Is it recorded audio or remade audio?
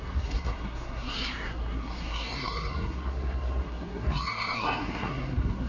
remade